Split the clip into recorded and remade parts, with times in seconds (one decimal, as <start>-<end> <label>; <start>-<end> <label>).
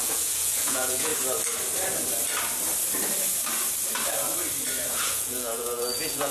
0.0-1.1 remade; 1.1-4.9 recorded; 4.9-6.3 remade